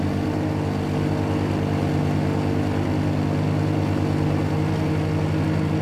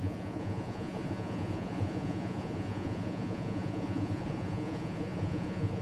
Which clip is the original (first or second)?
first